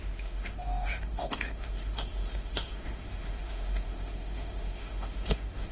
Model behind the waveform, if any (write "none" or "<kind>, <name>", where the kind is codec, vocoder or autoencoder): autoencoder, DAC-VAE